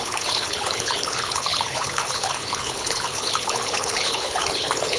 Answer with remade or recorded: remade